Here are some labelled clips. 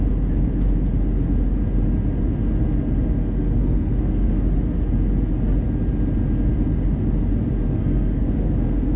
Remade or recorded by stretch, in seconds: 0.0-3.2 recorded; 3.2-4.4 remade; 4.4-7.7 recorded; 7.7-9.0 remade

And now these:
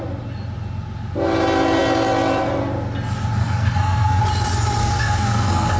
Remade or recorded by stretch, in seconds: 0.0-3.4 recorded; 3.4-4.2 remade; 4.2-4.8 recorded; 4.8-5.8 remade

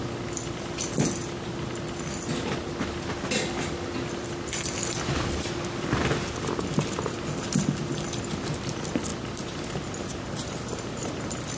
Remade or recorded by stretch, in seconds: 0.0-11.6 recorded

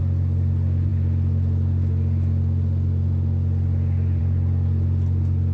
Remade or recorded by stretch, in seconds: 0.0-5.5 recorded

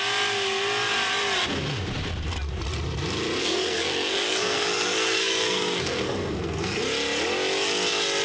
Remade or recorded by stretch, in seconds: 0.0-3.4 recorded; 3.4-6.8 remade; 6.8-8.2 recorded

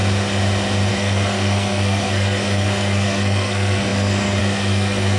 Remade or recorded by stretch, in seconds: 0.0-0.9 recorded; 0.9-5.2 remade

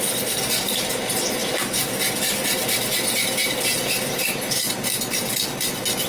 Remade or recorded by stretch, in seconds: 0.0-6.1 recorded